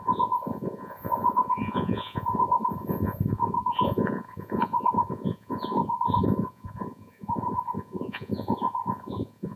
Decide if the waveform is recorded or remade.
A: remade